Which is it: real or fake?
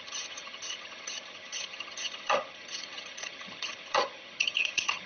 fake